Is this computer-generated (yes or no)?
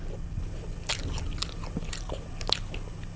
no